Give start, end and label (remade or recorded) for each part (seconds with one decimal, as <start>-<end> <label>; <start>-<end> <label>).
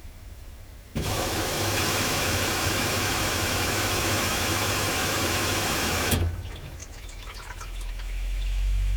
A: 0.0-9.0 remade